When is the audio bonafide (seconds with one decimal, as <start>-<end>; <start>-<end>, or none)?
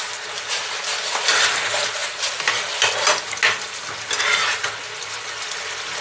0.0-6.0